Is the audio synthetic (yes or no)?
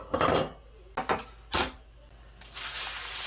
no